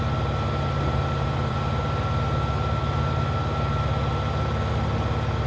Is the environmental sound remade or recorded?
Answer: recorded